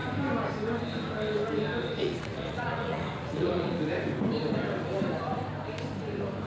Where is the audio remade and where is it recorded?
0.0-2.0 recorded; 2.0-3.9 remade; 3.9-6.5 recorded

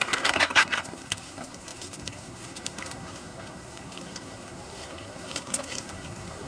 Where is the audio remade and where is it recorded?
0.0-6.5 remade

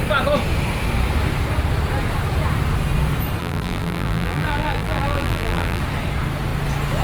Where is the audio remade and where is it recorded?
0.0-3.4 recorded; 3.4-5.8 remade; 5.8-7.0 recorded